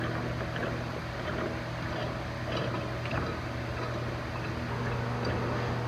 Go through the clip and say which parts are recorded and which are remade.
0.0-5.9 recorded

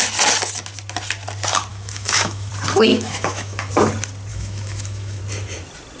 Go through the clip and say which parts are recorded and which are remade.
0.0-1.7 recorded; 1.7-2.5 remade; 2.5-2.9 recorded; 2.9-3.7 remade; 3.7-4.3 recorded; 4.3-5.2 remade; 5.2-6.0 recorded

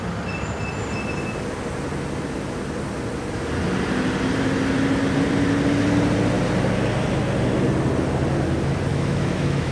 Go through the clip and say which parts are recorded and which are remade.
0.0-8.9 recorded; 8.9-9.7 remade

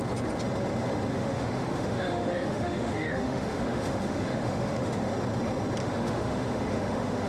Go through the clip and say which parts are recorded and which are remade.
0.0-1.1 recorded; 1.1-5.1 remade; 5.1-5.8 recorded; 5.8-7.3 remade

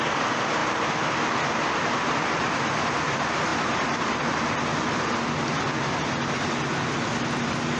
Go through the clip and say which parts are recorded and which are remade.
0.0-7.8 recorded

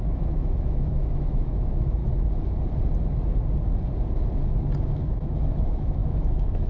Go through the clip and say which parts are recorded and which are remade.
0.0-2.0 remade; 2.0-4.8 recorded; 4.8-6.7 remade

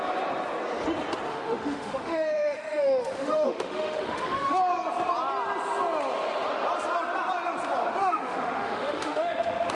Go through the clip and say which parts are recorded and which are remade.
0.0-1.3 recorded; 1.3-4.6 remade; 4.6-8.0 recorded; 8.0-9.7 remade

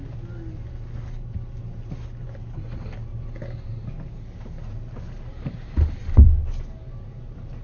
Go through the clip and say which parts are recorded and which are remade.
0.0-7.6 recorded